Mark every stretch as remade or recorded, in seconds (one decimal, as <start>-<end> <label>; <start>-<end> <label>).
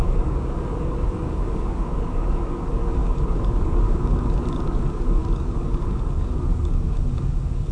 0.0-7.7 remade